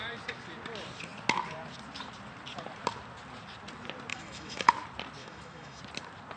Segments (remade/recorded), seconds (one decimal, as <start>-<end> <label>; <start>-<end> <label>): 0.0-4.1 recorded; 4.1-4.7 remade; 4.7-5.2 recorded; 5.2-5.8 remade; 5.8-6.4 recorded